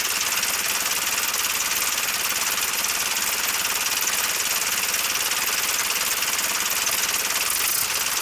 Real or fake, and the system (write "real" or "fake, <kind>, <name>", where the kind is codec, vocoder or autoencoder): real